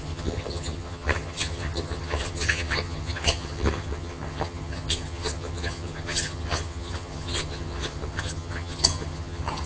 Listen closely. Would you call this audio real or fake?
fake